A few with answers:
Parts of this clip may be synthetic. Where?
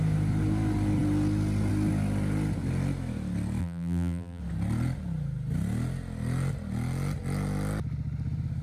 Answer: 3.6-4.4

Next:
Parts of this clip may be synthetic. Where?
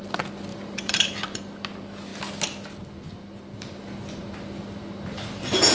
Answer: 0.5-1.4